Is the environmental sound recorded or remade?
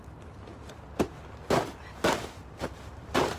recorded